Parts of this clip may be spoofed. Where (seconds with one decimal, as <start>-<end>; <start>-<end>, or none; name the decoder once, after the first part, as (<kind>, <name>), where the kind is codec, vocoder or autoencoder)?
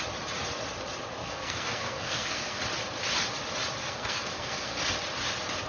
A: 1.2-2.6 (codec, SNAC); 3.8-4.8